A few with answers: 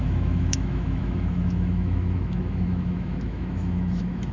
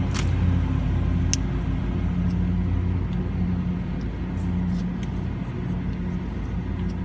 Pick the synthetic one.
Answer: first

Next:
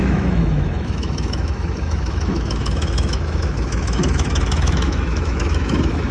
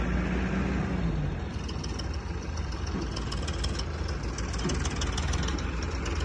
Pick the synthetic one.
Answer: first